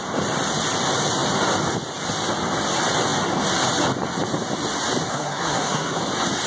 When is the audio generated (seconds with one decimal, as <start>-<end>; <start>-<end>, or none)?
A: 5.1-6.0